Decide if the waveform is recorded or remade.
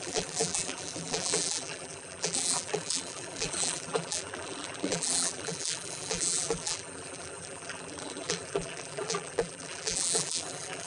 remade